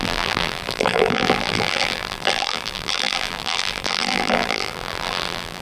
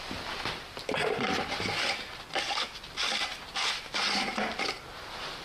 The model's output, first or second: first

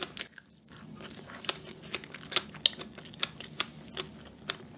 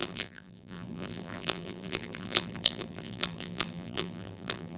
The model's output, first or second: second